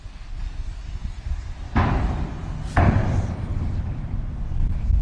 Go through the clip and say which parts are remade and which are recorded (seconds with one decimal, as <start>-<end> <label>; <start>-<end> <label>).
0.0-5.0 recorded